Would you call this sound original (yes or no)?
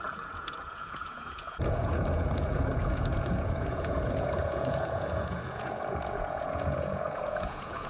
no